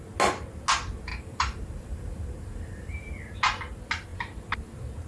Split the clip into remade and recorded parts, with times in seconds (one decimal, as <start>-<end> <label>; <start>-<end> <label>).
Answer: 0.0-1.1 recorded; 1.1-3.1 remade; 3.1-5.1 recorded